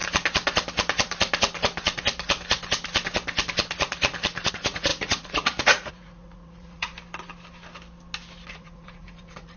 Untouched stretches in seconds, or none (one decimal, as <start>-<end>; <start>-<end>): 0.0-4.5; 6.9-8.5